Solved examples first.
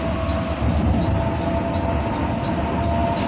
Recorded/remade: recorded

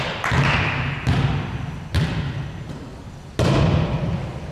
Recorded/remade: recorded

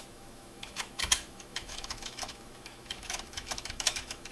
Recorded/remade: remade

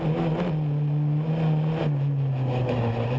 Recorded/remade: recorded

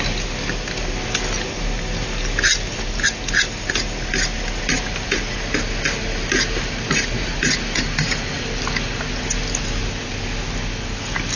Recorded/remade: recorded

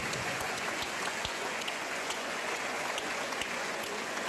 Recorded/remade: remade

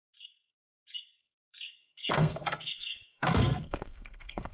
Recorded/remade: remade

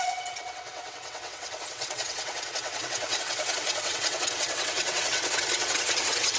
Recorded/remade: remade